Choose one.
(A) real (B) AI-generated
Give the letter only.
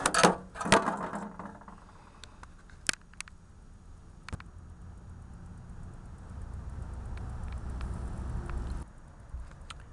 A